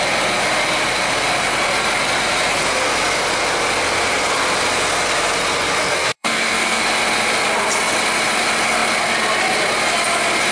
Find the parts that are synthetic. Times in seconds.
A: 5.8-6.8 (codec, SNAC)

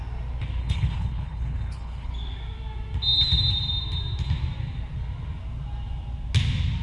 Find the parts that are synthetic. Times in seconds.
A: 0.6-2.1 (codec, HILCodec)

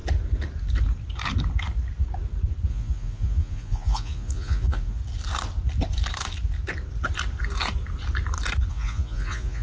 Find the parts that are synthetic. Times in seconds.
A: 2.7-5.0 (vocoder, Vocos); 8.7-9.6

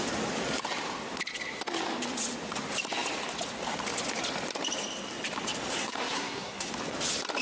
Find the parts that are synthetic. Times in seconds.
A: 5.8-6.7 (codec, SNAC)

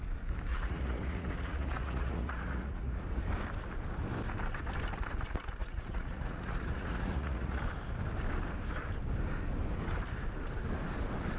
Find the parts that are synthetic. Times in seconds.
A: 0.5-3.2 (vocoder, Vocos); 5.6-7.6